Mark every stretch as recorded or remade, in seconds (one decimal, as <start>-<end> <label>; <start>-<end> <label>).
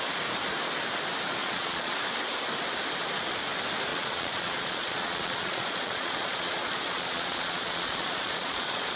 0.0-1.4 recorded; 1.4-2.0 remade; 2.0-3.9 recorded; 3.9-9.0 remade